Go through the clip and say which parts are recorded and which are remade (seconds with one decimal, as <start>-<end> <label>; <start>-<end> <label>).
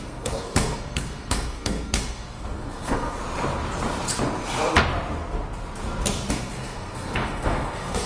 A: 0.0-3.2 remade; 3.2-6.3 recorded; 6.3-8.1 remade